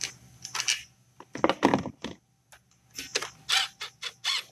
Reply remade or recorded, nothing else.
recorded